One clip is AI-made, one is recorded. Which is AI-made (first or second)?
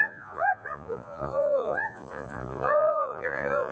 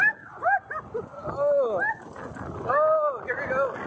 first